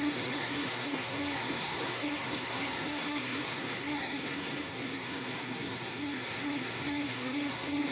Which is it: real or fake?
fake